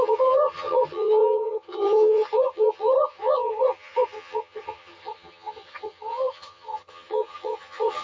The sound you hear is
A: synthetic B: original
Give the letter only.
A